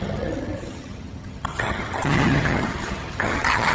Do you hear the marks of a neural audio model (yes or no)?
yes